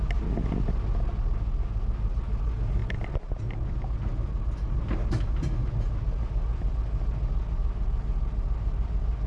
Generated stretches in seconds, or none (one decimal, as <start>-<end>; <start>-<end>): none